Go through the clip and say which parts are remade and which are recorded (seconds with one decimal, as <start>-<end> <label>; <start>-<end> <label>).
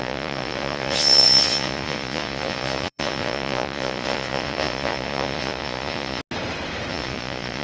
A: 0.0-6.2 remade; 6.2-6.9 recorded; 6.9-7.6 remade